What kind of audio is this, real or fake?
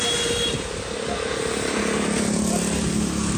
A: real